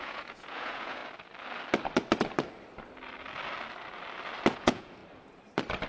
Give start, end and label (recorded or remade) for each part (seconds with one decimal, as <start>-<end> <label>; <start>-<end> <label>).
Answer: 0.0-1.0 remade; 1.0-4.5 recorded; 4.5-5.0 remade; 5.0-5.9 recorded